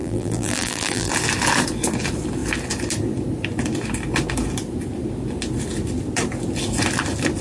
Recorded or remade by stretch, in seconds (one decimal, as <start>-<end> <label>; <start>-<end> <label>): 0.0-1.1 remade; 1.1-7.4 recorded